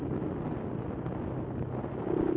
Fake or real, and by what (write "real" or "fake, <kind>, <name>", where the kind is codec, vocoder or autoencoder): real